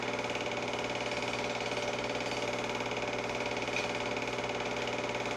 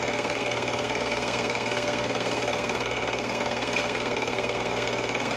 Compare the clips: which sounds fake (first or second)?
second